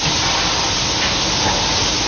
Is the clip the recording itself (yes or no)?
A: yes